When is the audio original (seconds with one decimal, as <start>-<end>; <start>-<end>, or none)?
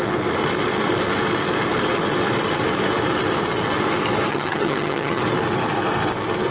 0.0-4.3; 5.2-6.5